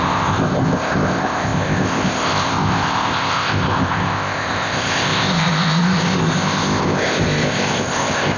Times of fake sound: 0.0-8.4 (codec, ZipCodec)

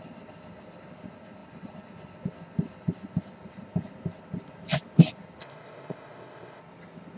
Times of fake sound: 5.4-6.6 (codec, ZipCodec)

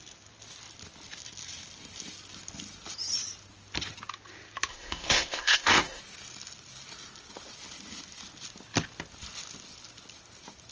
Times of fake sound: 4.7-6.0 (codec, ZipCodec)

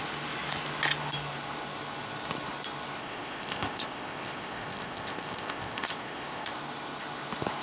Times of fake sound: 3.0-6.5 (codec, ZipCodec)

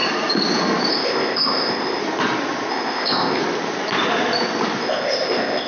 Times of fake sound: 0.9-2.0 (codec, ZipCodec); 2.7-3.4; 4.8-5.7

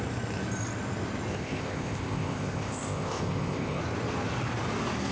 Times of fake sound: 1.3-3.8 (codec, ZipCodec)

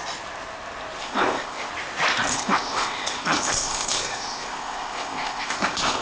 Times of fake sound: 1.0-1.7 (codec, ZipCodec); 2.3-6.0